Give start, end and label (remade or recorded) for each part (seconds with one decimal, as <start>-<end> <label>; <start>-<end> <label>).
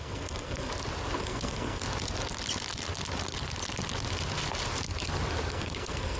0.0-0.7 remade; 0.7-1.2 recorded; 1.2-1.8 remade; 1.8-5.5 recorded; 5.5-6.2 remade